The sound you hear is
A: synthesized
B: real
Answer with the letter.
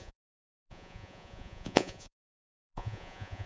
A